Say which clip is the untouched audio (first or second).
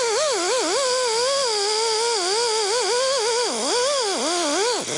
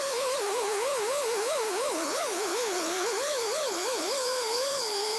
first